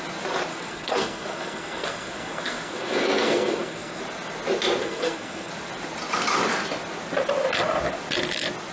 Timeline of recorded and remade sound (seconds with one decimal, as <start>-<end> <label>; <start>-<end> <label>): 0.0-0.5 recorded; 0.5-4.0 remade; 4.0-4.8 recorded; 4.8-5.5 remade; 5.5-8.7 recorded